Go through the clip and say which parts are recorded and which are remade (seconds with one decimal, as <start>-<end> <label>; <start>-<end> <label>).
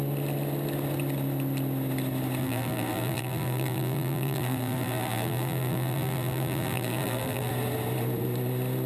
0.0-2.4 recorded; 2.4-7.5 remade; 7.5-8.9 recorded